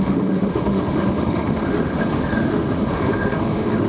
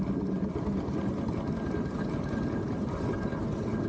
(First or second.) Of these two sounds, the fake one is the first